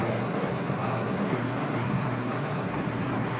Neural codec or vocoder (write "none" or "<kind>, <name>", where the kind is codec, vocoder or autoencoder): codec, SNAC